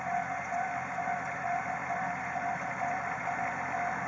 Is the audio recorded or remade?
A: remade